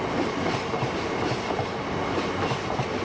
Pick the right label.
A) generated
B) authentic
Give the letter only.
B